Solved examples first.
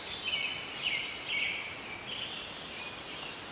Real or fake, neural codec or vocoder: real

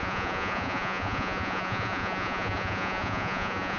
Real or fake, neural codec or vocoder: fake, vocoder, Vocos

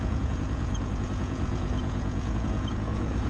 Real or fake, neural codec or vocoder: fake, vocoder, Vocos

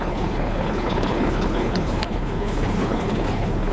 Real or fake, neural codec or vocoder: fake, codec, HILCodec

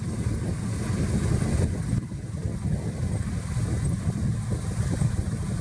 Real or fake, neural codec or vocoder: real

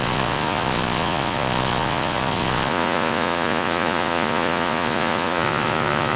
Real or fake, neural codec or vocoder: fake, vocoder, Vocos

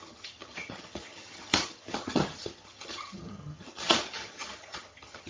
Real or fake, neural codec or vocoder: fake, vocoder, HiFi-GAN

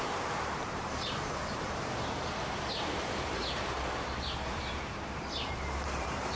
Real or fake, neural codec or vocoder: fake, vocoder, BigVGAN v2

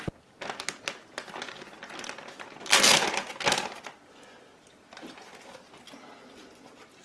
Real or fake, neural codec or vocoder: real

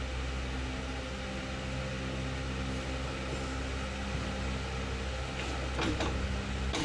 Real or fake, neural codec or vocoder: real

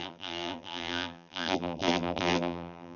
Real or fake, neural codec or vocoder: fake, vocoder, BigVGAN v2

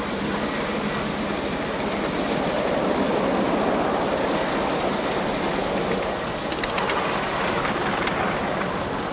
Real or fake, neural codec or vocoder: real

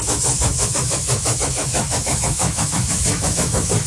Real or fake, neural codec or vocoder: fake, autoencoder, DAC-VAE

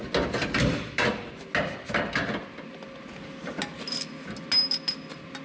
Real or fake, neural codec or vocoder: real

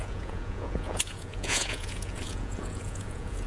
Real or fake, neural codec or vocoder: fake, vocoder, Vocos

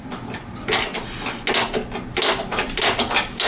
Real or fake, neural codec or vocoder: real